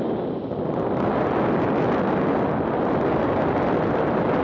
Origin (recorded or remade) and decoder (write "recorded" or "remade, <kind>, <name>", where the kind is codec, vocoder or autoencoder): recorded